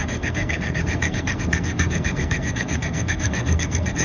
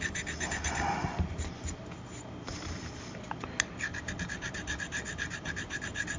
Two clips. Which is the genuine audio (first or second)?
second